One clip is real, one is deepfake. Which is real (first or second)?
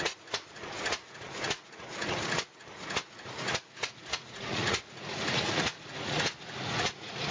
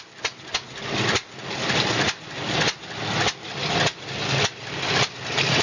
second